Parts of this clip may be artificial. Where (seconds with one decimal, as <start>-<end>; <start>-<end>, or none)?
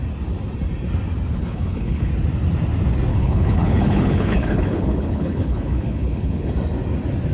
1.4-2.1; 3.1-6.5